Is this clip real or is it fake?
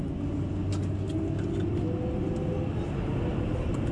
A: real